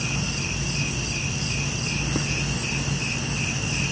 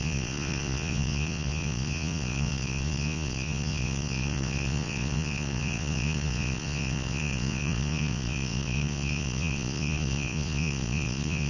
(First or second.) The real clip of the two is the first